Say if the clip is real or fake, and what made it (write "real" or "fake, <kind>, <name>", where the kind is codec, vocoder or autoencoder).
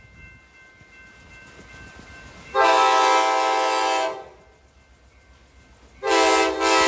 real